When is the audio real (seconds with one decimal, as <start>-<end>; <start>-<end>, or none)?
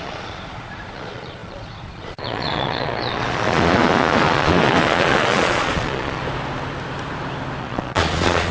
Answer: 6.2-7.6